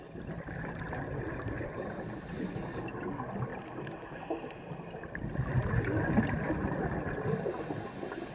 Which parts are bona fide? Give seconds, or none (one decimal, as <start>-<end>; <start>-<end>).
0.0-8.3